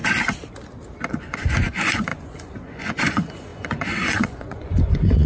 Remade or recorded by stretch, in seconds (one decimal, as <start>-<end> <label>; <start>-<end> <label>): 0.0-1.1 recorded; 1.1-5.3 remade